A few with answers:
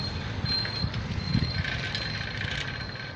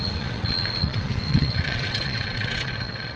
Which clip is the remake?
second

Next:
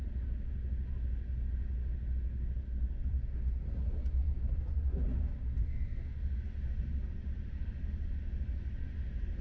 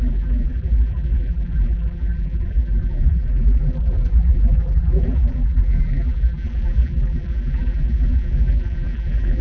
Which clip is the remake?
second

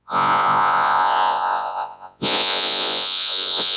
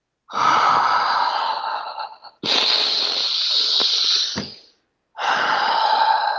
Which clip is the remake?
first